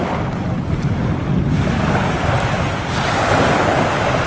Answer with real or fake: real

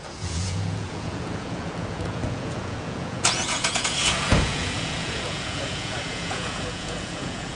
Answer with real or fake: fake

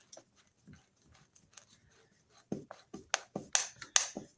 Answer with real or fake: real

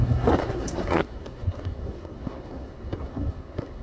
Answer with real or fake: fake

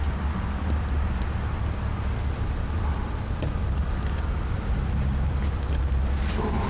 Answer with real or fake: real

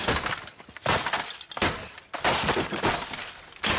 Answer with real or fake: real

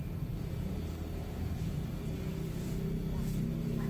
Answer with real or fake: real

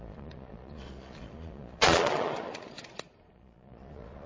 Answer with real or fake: fake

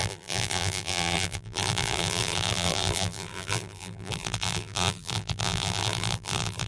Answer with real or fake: fake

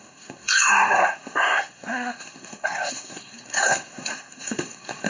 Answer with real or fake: fake